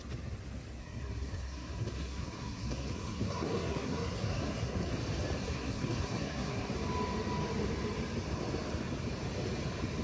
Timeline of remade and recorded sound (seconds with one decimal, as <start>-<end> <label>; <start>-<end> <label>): 0.0-0.8 recorded; 0.8-4.9 remade; 4.9-5.4 recorded; 5.4-6.7 remade; 6.7-10.0 recorded